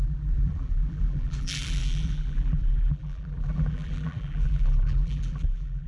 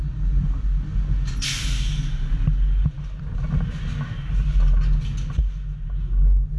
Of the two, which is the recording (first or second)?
second